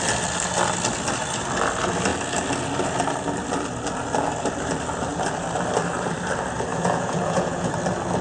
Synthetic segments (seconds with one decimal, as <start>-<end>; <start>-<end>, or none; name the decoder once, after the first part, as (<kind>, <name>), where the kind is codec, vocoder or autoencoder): 6.7-7.7 (vocoder, Vocos)